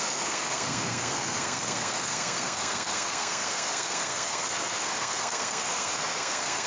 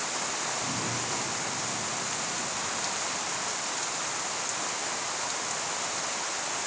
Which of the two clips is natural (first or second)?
second